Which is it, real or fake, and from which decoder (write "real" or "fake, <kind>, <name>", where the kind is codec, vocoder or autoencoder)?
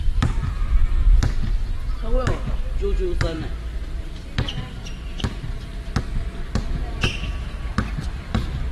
real